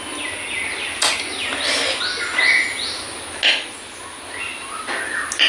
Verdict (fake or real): real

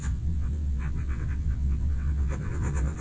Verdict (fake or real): fake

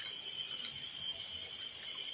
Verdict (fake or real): real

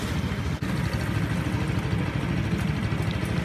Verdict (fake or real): real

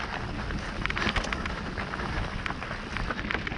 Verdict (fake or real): real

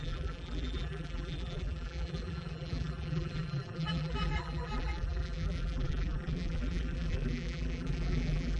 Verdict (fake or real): fake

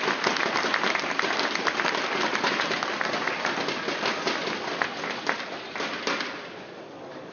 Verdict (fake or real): real